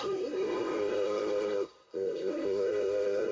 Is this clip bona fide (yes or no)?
no